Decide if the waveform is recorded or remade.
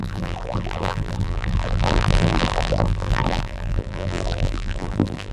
remade